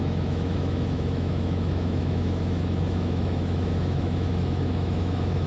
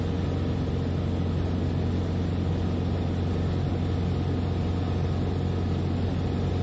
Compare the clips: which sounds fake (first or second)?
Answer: first